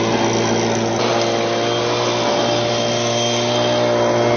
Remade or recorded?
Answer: recorded